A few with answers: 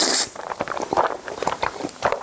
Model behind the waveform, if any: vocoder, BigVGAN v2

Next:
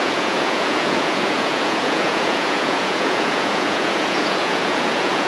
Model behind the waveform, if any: vocoder, Vocos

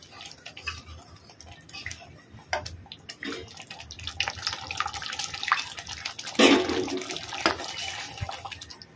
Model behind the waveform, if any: none